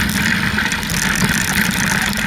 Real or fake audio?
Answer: real